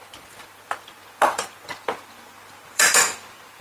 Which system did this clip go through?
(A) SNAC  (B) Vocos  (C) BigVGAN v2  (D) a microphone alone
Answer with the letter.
C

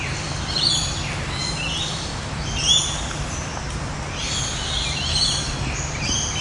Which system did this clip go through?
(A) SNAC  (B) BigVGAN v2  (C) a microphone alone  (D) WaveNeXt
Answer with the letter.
C